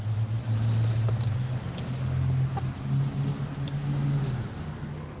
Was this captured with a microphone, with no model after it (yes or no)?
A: yes